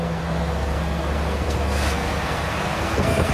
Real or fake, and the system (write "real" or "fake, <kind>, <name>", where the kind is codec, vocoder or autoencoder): fake, codec, SNAC